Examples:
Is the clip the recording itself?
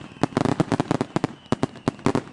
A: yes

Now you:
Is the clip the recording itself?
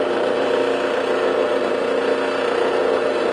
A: yes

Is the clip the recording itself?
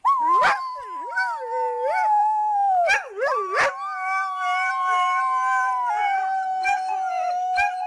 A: yes